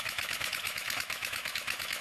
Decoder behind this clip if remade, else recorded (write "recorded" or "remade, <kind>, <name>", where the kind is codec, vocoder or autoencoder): remade, autoencoder, DAC-VAE